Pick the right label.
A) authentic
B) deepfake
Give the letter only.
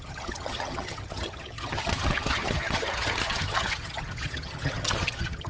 B